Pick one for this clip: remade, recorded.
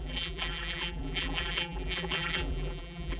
remade